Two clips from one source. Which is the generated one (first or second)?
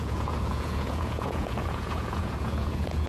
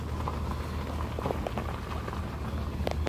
first